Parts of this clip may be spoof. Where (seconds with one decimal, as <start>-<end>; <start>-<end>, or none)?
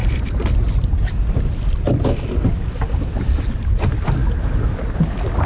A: none